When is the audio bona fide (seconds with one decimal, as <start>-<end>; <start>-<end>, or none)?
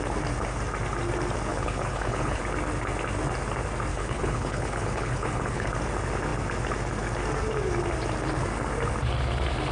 0.0-1.5; 2.4-3.9; 5.7-9.7